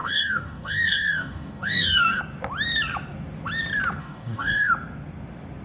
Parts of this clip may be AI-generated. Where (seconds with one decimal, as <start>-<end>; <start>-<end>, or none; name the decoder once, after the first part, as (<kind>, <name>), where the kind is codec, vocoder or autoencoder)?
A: 0.0-2.2 (codec, DAC); 4.0-4.7